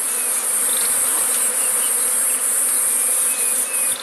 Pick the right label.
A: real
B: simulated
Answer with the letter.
A